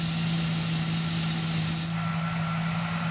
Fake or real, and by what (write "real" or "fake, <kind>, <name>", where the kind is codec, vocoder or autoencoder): real